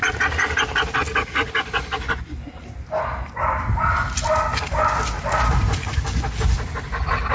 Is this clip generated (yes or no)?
no